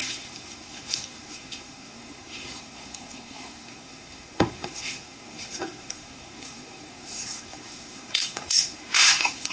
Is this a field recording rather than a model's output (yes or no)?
no